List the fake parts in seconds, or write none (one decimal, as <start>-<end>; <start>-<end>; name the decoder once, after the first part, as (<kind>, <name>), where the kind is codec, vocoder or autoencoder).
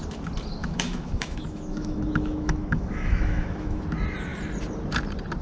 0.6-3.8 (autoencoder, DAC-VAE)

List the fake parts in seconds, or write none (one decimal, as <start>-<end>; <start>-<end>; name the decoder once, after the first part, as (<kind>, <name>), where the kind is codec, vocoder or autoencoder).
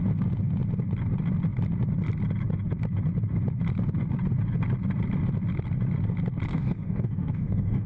6.5-7.9 (autoencoder, DAC-VAE)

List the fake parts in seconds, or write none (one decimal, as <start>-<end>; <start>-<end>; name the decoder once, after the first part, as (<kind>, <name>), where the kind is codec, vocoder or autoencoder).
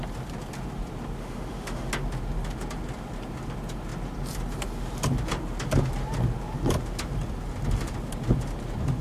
1.2-1.9 (autoencoder, DAC-VAE)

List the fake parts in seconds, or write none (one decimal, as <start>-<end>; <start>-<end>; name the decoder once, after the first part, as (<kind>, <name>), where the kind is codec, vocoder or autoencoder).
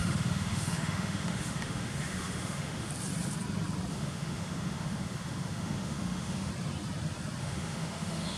0.0-2.9 (autoencoder, DAC-VAE); 3.9-6.5; 7.4-8.4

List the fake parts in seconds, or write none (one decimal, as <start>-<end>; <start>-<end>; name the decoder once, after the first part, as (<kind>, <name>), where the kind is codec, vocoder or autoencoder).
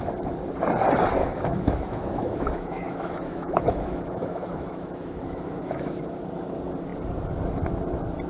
1.2-6.2 (autoencoder, DAC-VAE)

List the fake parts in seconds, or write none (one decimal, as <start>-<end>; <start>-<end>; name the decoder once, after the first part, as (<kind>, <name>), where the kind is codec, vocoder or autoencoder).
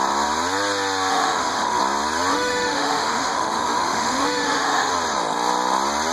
1.1-1.8 (autoencoder, DAC-VAE); 2.3-4.9